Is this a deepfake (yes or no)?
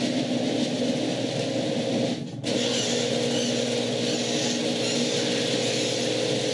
no